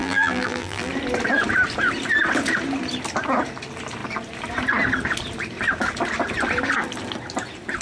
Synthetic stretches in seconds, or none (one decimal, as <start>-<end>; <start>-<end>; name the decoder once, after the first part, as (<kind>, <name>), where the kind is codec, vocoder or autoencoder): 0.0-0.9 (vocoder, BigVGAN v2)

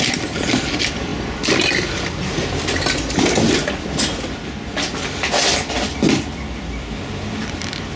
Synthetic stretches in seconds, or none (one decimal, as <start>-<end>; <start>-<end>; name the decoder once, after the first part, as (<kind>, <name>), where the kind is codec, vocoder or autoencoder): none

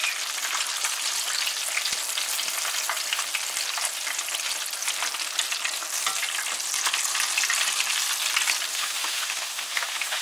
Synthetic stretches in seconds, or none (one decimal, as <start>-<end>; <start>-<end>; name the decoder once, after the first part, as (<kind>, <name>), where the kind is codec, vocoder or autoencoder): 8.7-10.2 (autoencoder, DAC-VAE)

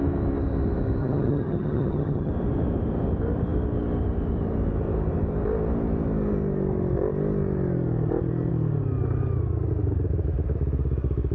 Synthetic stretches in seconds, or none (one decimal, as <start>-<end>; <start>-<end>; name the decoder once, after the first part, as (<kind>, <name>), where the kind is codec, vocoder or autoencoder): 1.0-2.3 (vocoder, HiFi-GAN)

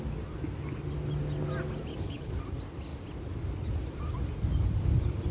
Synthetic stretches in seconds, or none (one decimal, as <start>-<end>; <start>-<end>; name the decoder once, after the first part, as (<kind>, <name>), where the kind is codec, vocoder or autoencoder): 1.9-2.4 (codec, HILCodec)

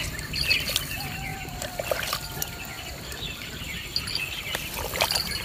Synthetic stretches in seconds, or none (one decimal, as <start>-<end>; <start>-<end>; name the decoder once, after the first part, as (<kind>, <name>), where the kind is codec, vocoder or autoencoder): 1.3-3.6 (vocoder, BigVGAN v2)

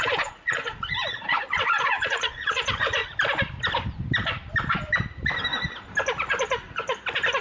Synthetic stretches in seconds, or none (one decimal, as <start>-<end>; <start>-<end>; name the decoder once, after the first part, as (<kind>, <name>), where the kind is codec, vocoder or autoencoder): 0.0-3.0 (vocoder, Vocos)